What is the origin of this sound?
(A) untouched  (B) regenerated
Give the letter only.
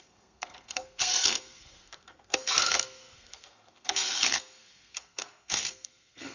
B